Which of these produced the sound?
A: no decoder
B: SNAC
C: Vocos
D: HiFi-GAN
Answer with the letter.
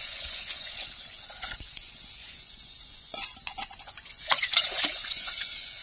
C